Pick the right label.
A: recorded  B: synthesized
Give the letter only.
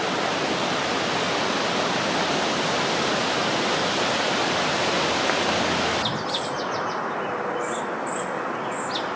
A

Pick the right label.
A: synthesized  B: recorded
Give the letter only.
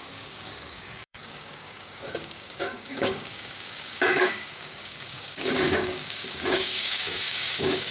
A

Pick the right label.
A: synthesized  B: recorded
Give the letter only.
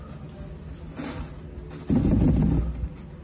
B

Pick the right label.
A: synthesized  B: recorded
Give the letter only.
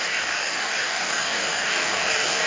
A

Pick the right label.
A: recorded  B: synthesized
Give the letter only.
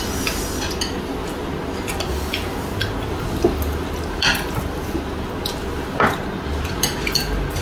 A